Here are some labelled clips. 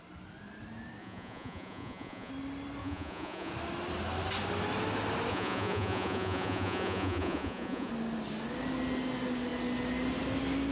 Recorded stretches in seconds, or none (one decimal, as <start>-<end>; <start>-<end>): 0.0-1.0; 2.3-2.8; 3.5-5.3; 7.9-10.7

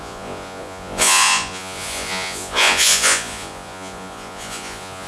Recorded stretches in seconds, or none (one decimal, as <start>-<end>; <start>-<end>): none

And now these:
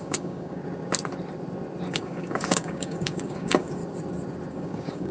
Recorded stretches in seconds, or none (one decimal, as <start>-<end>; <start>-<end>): 0.6-1.9; 3.8-4.5

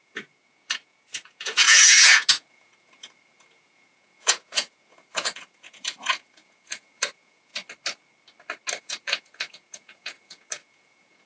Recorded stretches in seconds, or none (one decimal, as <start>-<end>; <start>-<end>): 7.5-8.8

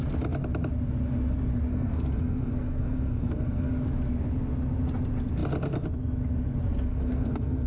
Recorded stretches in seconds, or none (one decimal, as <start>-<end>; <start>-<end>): 0.0-1.7; 3.8-6.9

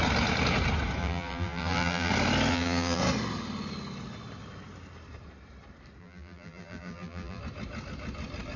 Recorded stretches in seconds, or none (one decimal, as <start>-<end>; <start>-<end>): 0.0-1.0; 2.1-2.5; 3.0-6.0; 7.4-8.6